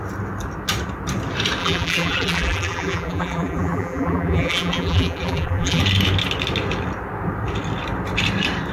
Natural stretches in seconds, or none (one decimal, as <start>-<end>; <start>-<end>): 0.0-1.6; 5.8-8.7